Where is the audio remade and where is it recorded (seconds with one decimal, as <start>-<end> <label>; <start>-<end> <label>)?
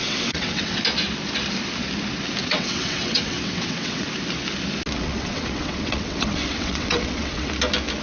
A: 0.0-0.8 remade; 0.8-2.4 recorded; 2.4-4.1 remade; 4.1-5.0 recorded; 5.0-7.5 remade; 7.5-8.0 recorded